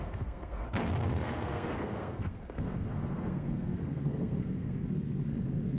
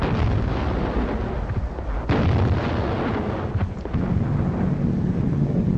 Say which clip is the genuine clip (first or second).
second